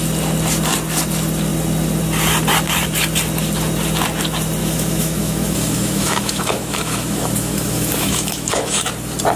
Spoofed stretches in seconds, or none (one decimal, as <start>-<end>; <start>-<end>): 4.6-8.9